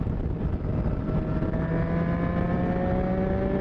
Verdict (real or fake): real